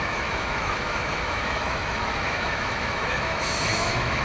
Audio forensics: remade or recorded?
remade